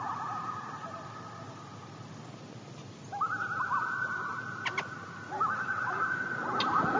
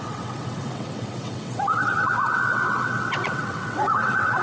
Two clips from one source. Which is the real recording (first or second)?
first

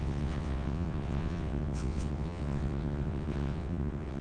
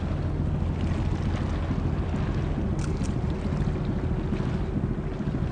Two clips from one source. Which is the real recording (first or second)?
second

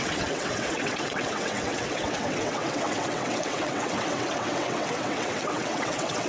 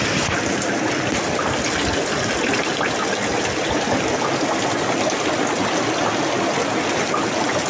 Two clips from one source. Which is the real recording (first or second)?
second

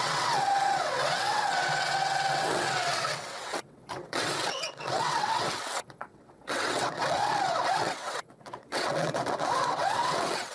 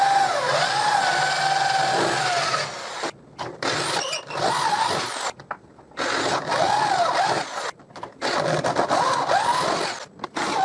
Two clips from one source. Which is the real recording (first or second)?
second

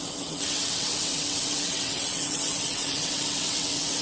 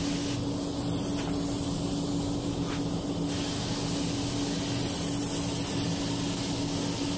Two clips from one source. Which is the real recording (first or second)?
second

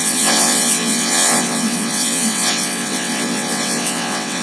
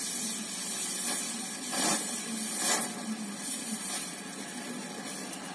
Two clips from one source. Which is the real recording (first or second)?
second